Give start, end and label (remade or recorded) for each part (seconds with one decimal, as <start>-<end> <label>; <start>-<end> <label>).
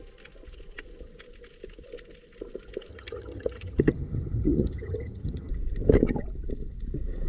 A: 0.0-2.9 recorded; 2.9-5.5 remade; 5.5-7.3 recorded